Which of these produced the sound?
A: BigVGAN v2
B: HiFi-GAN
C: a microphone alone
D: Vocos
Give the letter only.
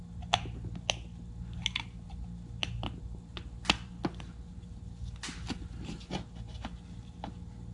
C